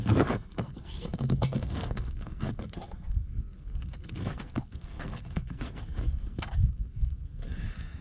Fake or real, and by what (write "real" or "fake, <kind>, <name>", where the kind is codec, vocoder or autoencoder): fake, codec, SNAC